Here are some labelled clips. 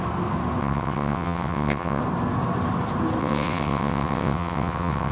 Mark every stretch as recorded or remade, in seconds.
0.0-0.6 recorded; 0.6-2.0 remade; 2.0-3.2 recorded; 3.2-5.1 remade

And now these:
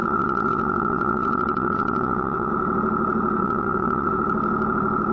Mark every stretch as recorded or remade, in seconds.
0.0-2.5 remade; 2.5-3.4 recorded; 3.4-4.1 remade; 4.1-5.1 recorded